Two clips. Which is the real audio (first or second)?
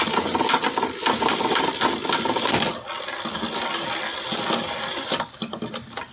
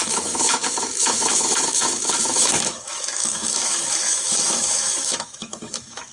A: first